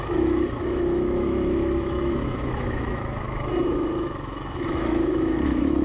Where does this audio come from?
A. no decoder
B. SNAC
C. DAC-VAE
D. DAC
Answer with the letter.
C